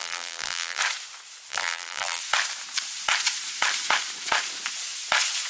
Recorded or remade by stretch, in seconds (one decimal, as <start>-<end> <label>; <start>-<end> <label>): 0.0-0.8 remade; 0.8-1.5 recorded; 1.5-2.2 remade; 2.2-5.5 recorded